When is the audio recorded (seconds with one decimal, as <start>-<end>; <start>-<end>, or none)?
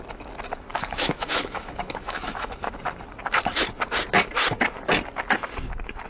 0.0-0.7; 2.7-6.1